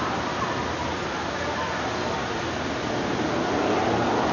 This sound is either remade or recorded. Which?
recorded